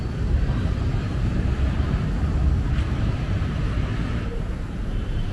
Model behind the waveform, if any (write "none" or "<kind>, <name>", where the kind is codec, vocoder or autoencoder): vocoder, BigVGAN v2